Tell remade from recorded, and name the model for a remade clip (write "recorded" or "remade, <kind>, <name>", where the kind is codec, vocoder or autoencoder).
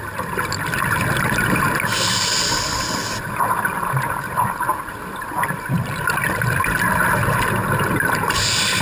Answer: recorded